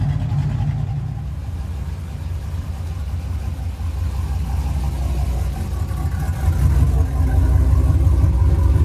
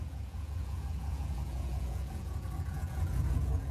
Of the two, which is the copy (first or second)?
second